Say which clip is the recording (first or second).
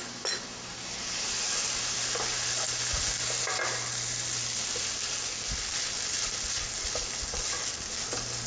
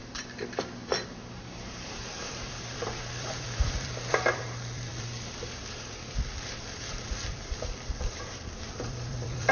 first